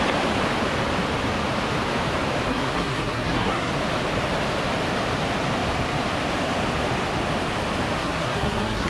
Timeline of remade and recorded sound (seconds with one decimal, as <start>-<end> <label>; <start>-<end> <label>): 0.0-2.5 recorded; 2.5-3.7 remade; 3.7-8.0 recorded; 8.0-8.9 remade